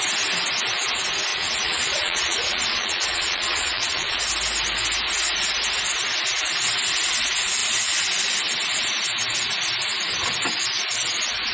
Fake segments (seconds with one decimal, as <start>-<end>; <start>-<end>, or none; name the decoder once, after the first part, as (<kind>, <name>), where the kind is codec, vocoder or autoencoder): 1.3-4.2 (vocoder, Vocos)